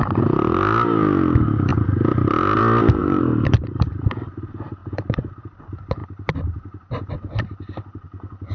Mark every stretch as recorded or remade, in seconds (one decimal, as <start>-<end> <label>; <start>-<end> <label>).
0.0-3.0 recorded; 3.0-4.0 remade; 4.0-4.8 recorded; 4.8-5.6 remade; 5.6-6.0 recorded; 6.0-7.1 remade; 7.1-8.5 recorded